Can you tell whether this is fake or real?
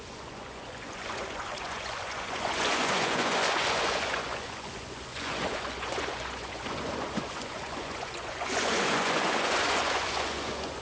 fake